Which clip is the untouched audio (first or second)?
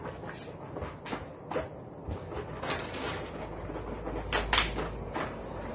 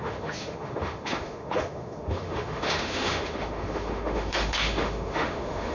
first